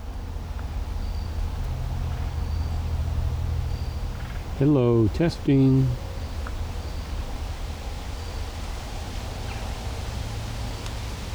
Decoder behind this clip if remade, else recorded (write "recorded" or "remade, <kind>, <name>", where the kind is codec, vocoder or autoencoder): recorded